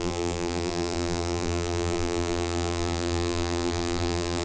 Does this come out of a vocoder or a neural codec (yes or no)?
yes